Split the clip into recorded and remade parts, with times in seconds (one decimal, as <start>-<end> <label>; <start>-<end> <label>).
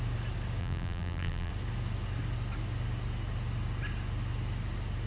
0.0-0.6 recorded; 0.6-1.5 remade; 1.5-5.1 recorded